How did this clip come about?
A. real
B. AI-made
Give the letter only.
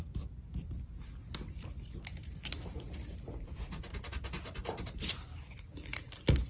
A